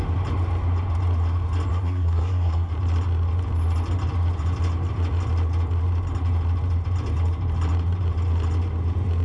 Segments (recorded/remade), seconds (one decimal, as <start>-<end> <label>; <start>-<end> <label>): 0.0-1.7 recorded; 1.7-2.7 remade; 2.7-9.2 recorded